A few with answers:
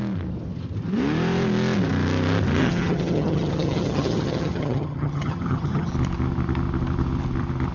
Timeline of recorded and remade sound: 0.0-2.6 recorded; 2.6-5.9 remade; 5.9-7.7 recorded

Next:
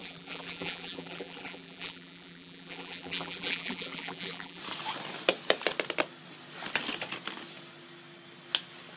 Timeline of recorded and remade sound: 0.0-4.6 remade; 4.6-9.0 recorded

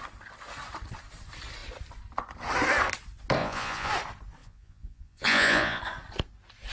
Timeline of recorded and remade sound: 0.0-3.4 recorded; 3.4-3.9 remade; 3.9-4.4 recorded; 4.4-5.8 remade; 5.8-6.7 recorded

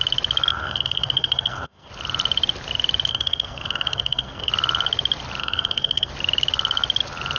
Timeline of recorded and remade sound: 0.0-0.5 recorded; 0.5-1.9 remade; 1.9-3.1 recorded; 3.1-4.5 remade; 4.5-5.4 recorded; 5.4-6.1 remade; 6.1-7.4 recorded

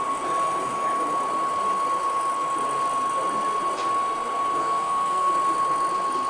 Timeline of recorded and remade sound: 0.0-4.6 recorded; 4.6-5.3 remade; 5.3-6.3 recorded

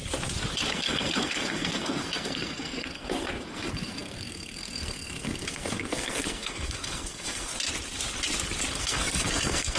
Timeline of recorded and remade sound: 0.0-0.7 recorded; 0.7-7.5 remade; 7.5-8.8 recorded; 8.8-9.8 remade